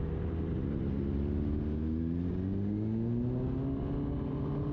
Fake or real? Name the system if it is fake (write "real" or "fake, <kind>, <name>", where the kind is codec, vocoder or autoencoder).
real